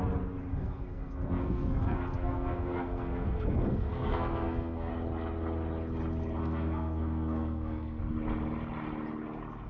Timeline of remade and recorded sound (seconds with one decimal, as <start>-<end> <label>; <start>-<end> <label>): 0.0-0.5 recorded; 0.5-4.9 remade; 4.9-6.4 recorded; 6.4-8.0 remade; 8.0-9.7 recorded